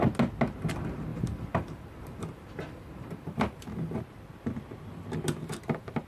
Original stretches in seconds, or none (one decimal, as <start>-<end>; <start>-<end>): 0.0-1.1; 4.0-5.4